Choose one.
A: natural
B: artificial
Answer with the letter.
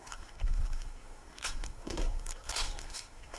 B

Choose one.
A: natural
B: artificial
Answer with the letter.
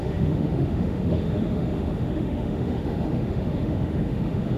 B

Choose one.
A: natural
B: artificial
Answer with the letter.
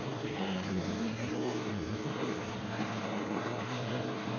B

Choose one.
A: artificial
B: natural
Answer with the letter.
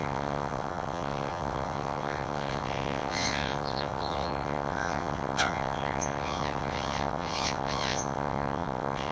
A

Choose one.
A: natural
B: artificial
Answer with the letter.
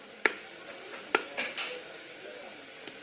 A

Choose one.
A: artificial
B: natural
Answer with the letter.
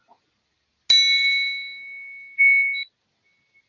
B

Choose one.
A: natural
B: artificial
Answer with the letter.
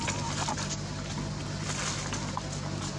A